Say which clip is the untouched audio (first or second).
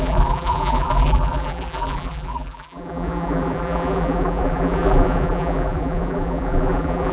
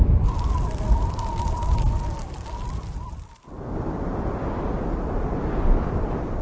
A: second